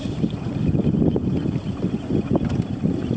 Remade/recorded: recorded